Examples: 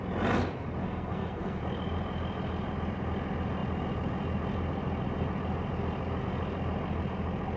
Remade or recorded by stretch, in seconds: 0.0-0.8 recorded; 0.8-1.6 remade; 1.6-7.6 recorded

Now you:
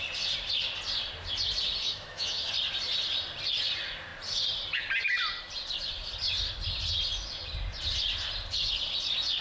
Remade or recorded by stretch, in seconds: 0.0-1.8 recorded; 1.8-2.5 remade; 2.5-9.4 recorded

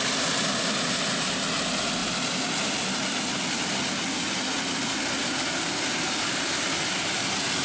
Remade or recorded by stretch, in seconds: 0.0-7.6 recorded

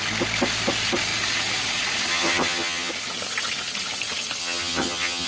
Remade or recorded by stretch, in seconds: 0.0-2.1 recorded; 2.1-2.9 remade; 2.9-4.4 recorded; 4.4-5.3 remade

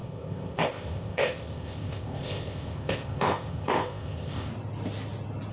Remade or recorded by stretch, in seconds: 0.0-4.5 remade; 4.5-5.5 recorded

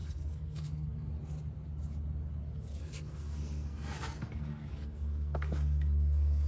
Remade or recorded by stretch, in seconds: 0.0-1.1 remade; 1.1-2.8 recorded; 2.8-6.5 remade

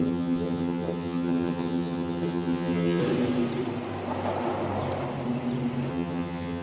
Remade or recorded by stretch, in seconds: 0.0-3.0 remade; 3.0-5.9 recorded; 5.9-6.6 remade